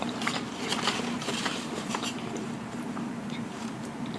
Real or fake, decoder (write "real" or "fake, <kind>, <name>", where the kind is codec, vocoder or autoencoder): fake, vocoder, BigVGAN v2